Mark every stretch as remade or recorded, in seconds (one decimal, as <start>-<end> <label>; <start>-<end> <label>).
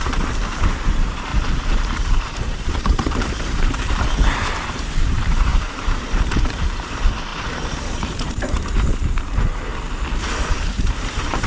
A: 0.0-9.7 remade; 9.7-10.6 recorded; 10.6-11.5 remade